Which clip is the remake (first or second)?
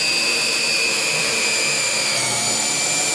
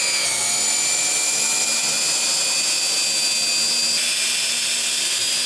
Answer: first